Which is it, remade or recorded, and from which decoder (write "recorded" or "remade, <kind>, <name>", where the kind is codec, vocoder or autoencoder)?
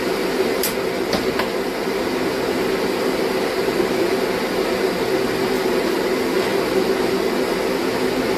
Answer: recorded